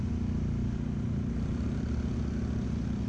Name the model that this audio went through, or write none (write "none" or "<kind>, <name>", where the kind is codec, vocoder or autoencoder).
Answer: none